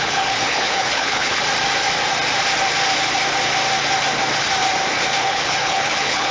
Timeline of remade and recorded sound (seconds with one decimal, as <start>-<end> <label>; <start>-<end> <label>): 0.0-1.4 remade; 1.4-5.2 recorded; 5.2-6.3 remade